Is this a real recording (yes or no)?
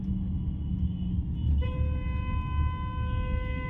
yes